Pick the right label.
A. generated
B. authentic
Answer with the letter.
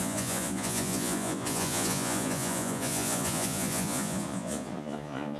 A